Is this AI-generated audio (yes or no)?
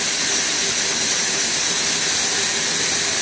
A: no